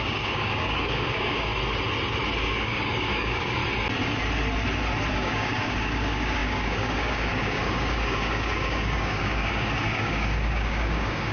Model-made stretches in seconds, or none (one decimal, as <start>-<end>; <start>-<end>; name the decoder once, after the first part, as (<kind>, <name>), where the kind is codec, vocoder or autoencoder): 0.0-1.5 (codec, DAC); 2.4-3.6; 5.1-11.3